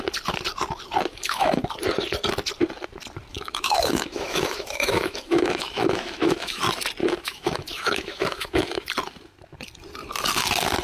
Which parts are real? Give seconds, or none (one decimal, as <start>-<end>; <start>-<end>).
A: 0.0-1.1; 1.6-3.3; 6.6-7.0; 8.9-10.8